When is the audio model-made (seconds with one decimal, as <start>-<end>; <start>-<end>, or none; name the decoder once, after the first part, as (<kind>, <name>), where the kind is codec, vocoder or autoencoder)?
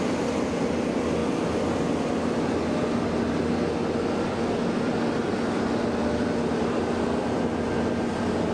none